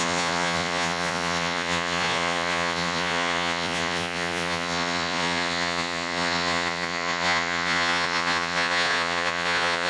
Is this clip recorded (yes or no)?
no